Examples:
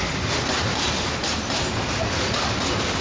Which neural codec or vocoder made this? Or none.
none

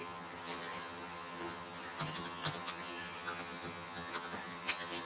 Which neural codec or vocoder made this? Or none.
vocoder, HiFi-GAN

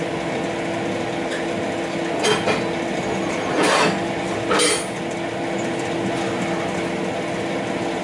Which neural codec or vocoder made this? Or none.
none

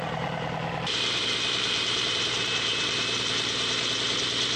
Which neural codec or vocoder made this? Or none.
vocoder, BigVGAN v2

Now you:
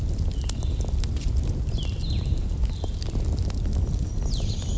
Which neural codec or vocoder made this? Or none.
none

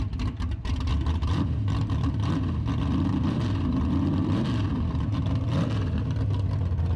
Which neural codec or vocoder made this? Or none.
vocoder, BigVGAN v2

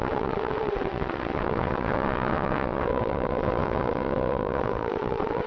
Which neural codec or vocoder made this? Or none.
vocoder, WaveNeXt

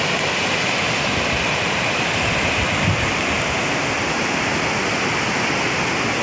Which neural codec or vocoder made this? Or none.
none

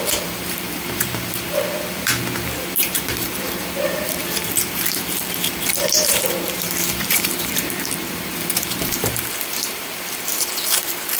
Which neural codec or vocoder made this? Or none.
vocoder, BigVGAN v2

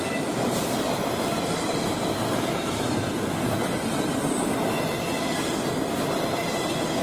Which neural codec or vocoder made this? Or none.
none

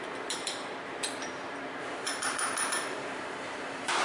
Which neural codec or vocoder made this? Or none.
vocoder, BigVGAN v2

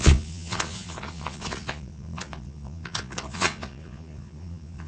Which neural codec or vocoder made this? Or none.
vocoder, Vocos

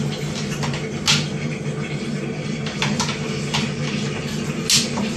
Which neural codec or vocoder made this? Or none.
none